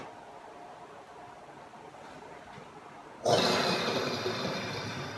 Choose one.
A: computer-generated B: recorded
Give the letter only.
B